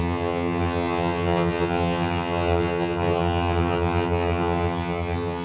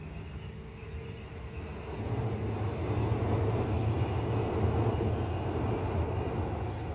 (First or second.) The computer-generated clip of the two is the first